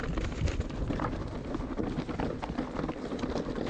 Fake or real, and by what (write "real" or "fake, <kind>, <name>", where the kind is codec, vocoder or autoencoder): real